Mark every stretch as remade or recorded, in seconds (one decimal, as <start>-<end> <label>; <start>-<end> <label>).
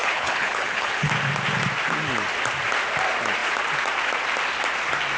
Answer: 0.0-1.1 remade; 1.1-5.2 recorded